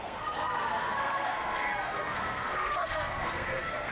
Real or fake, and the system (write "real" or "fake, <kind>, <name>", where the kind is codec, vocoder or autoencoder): fake, codec, SNAC